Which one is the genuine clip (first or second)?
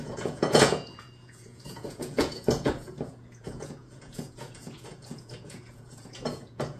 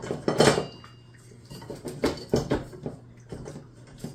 second